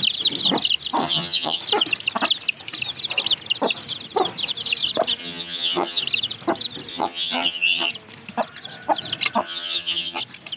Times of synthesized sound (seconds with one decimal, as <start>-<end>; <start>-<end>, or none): 1.0-1.6; 5.2-6.0; 6.9-7.9; 9.4-10.2